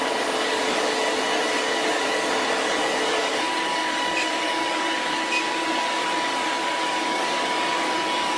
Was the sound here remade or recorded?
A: remade